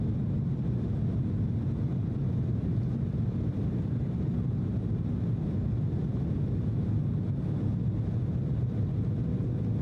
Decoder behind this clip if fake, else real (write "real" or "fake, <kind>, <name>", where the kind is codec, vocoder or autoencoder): real